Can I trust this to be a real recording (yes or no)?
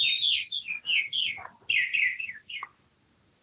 yes